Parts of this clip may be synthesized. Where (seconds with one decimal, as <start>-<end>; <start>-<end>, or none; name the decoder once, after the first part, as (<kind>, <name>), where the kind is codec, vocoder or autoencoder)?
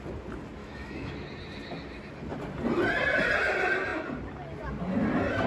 0.6-1.1 (autoencoder, DAC-VAE)